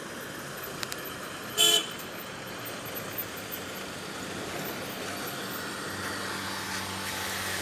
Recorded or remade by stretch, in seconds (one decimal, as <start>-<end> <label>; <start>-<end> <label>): 0.0-1.8 recorded; 1.8-2.5 remade; 2.5-7.6 recorded